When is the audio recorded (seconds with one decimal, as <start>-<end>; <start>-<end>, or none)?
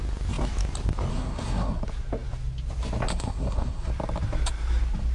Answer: 0.0-1.1; 1.8-3.1; 3.9-5.1